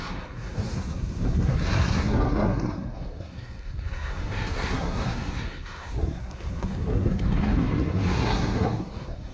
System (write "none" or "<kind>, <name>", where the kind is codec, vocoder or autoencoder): codec, SNAC